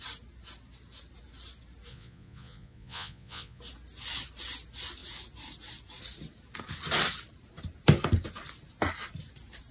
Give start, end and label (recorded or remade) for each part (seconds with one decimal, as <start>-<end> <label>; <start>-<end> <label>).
0.0-1.9 recorded; 1.9-3.6 remade; 3.6-9.7 recorded